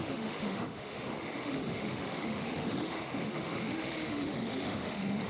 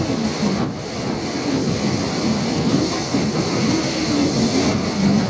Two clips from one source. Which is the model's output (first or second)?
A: first